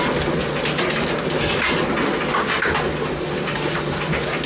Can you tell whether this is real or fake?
real